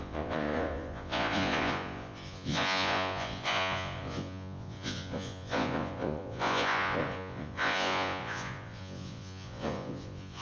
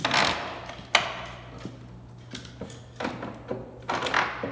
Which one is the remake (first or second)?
first